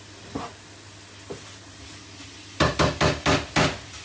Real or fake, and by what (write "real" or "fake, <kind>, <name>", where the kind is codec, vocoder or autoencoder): real